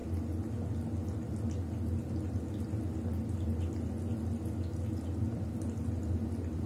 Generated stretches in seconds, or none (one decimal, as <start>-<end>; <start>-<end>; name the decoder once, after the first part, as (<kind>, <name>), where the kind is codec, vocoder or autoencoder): none